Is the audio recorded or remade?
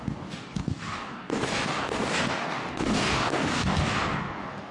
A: remade